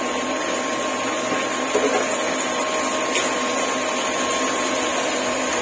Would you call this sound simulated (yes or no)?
no